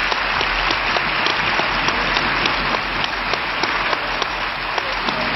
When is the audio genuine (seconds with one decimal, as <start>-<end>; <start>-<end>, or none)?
0.0-5.4